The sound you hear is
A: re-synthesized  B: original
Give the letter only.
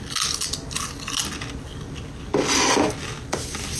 B